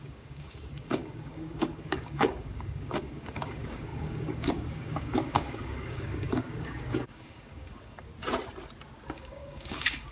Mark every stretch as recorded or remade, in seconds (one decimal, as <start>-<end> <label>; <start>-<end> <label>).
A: 0.0-8.1 remade; 8.1-9.1 recorded; 9.1-10.1 remade